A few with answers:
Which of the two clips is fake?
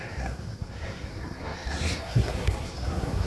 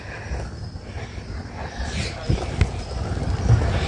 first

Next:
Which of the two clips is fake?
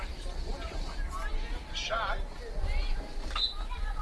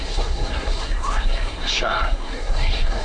second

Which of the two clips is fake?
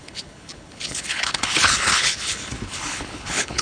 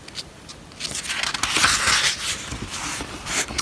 first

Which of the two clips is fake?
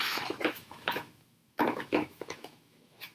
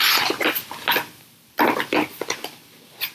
first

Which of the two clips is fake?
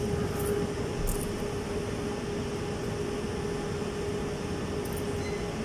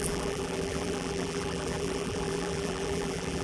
second